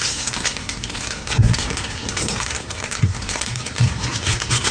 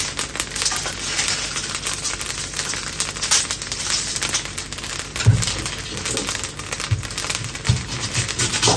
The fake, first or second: first